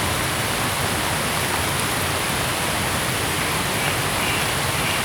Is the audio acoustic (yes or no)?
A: yes